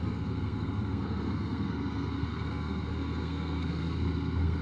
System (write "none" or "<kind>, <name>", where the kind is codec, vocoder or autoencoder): codec, SNAC